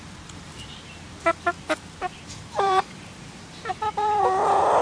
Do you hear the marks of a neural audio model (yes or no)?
yes